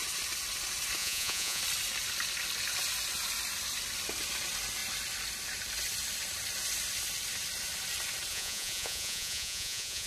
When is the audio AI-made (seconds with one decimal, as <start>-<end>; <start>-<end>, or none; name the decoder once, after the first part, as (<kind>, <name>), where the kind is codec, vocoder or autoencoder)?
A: 1.0-1.6 (vocoder, Vocos); 8.3-10.1